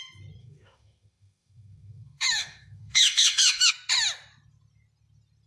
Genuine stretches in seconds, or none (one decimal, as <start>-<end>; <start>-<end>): 0.0-0.4; 3.7-5.5